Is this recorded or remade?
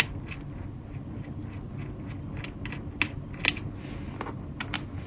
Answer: recorded